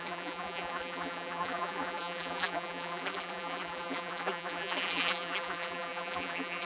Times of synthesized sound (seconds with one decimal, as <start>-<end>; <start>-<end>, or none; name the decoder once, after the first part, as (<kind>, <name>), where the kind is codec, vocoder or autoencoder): 0.0-6.6 (vocoder, BigVGAN v2)